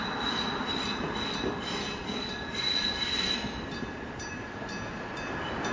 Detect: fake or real real